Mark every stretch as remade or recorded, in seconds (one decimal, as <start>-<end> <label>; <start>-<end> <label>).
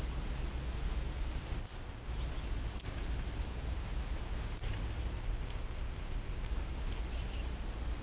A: 0.0-1.6 recorded; 1.6-2.1 remade; 2.1-5.2 recorded; 5.2-6.5 remade; 6.5-8.0 recorded